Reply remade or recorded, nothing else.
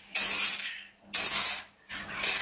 recorded